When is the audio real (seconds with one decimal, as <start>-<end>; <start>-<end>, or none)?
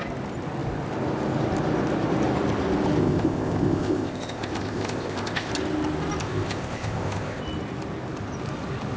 0.0-3.0; 5.5-6.2; 7.4-9.0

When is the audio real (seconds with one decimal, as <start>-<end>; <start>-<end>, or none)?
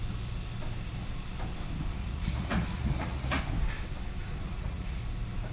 0.0-2.0; 3.4-4.5; 5.0-5.5